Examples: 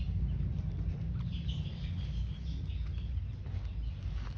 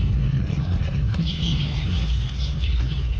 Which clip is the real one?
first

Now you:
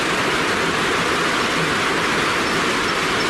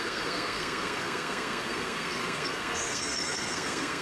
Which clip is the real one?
first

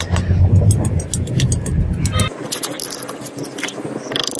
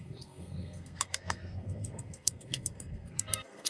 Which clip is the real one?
first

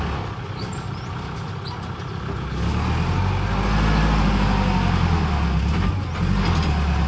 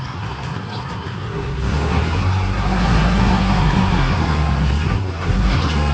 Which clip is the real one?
first